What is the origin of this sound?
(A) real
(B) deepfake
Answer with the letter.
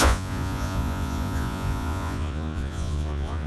B